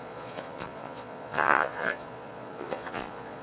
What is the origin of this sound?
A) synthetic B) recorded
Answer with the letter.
A